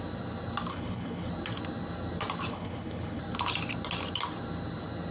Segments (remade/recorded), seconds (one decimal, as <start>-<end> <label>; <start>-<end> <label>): 0.0-0.7 recorded; 0.7-1.3 remade; 1.3-2.5 recorded; 2.5-3.2 remade; 3.2-5.1 recorded